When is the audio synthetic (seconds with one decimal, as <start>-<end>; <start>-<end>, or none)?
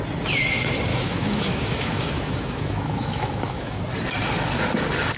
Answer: 0.9-3.8